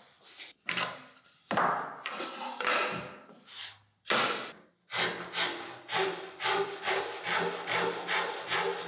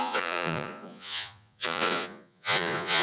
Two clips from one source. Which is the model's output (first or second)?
second